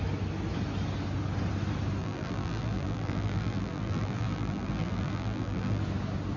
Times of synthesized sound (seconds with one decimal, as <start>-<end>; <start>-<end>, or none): 2.0-5.8